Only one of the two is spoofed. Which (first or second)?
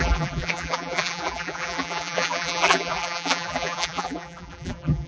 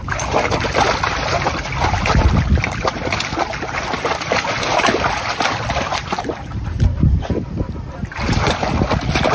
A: first